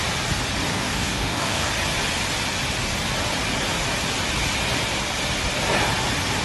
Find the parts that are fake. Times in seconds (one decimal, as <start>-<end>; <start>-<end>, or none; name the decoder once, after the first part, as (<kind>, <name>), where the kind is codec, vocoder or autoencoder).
0.7-1.7 (codec, DAC)